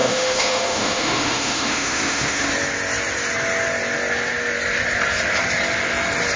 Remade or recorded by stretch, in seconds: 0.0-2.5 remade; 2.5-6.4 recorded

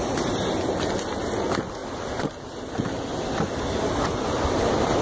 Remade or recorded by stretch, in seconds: 0.0-5.0 recorded

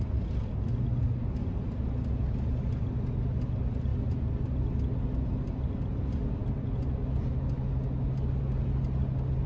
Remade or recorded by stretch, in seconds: 0.0-9.5 recorded

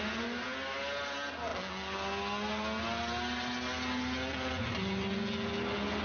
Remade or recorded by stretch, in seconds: 0.0-6.0 recorded

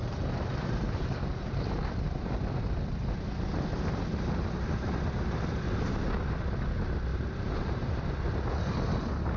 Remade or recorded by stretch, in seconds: 0.0-2.7 remade; 2.7-7.1 recorded; 7.1-8.0 remade; 8.0-9.4 recorded

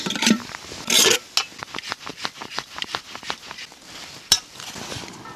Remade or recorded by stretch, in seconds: 0.0-5.4 recorded

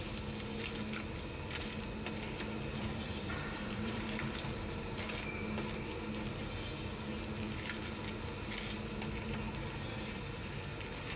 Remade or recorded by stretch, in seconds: 0.0-2.7 recorded; 2.7-5.1 remade; 5.1-11.2 recorded